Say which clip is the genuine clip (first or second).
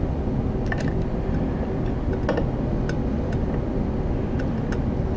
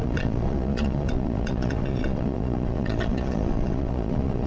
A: first